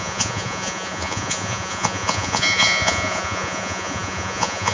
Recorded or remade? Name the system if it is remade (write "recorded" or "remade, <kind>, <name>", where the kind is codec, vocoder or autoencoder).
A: remade, vocoder, Vocos